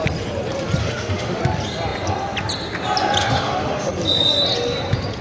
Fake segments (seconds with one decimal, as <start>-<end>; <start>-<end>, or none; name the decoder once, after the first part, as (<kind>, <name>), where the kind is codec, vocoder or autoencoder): 0.8-1.4 (autoencoder, DAC-VAE); 3.2-3.9